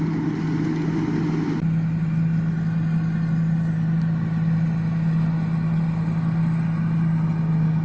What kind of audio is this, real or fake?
real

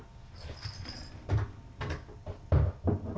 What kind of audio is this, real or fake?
real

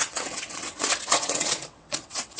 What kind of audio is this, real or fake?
fake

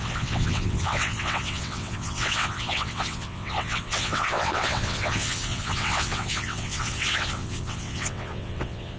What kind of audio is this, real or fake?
fake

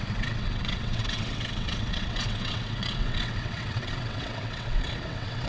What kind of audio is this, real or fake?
fake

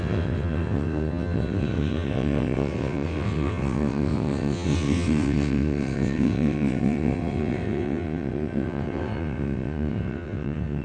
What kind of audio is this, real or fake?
fake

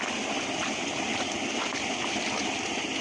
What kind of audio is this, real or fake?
real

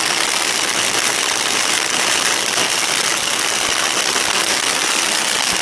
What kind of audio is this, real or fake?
real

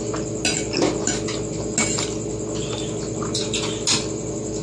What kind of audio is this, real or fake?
real